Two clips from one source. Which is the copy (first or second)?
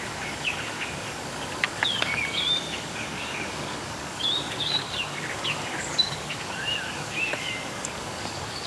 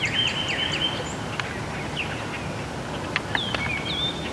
first